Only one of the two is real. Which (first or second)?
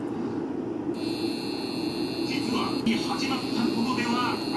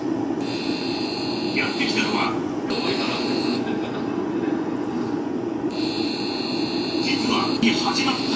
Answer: first